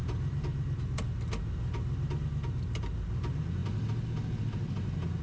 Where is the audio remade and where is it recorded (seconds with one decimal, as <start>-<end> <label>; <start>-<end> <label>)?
0.0-5.2 recorded